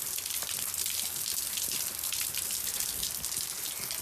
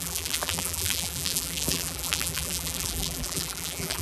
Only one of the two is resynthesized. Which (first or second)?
second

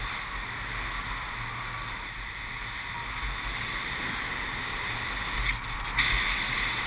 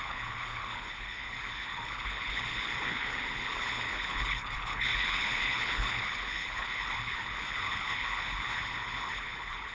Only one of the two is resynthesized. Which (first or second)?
second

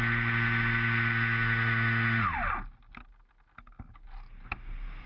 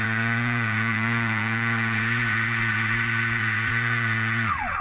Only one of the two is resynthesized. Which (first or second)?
second